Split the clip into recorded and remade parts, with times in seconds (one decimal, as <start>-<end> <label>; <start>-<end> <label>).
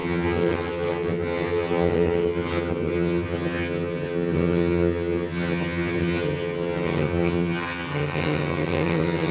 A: 0.0-9.3 remade